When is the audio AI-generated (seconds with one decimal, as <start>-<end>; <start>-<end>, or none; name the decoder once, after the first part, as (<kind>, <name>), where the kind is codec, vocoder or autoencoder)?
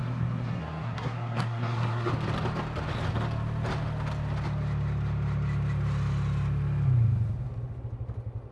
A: 0.0-2.1 (codec, SNAC)